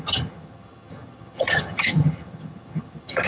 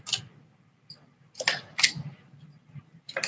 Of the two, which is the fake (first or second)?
first